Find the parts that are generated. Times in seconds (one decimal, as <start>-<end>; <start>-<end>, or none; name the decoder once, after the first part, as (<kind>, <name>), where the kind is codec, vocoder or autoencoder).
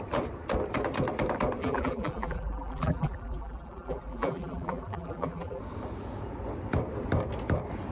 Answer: 1.6-5.6 (vocoder, BigVGAN v2)